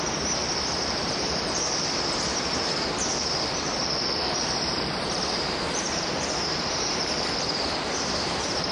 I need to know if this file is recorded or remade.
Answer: remade